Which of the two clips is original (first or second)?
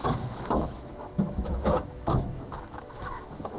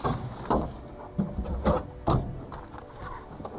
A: second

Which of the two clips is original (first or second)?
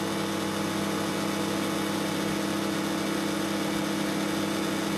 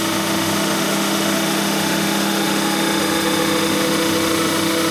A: first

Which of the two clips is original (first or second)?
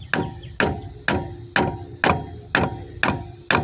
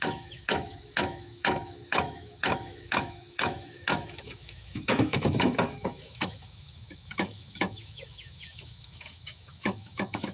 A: first